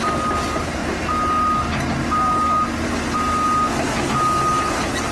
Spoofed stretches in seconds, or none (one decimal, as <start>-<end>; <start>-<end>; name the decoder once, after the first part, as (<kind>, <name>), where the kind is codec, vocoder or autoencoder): none